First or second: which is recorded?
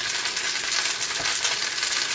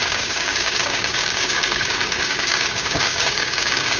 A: first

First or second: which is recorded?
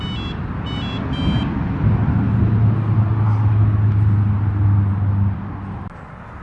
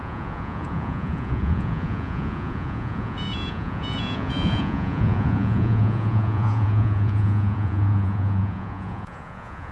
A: first